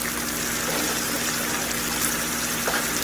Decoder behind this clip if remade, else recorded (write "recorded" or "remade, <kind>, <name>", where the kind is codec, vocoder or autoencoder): recorded